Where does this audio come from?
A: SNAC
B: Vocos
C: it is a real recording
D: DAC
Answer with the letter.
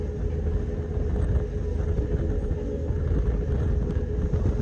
C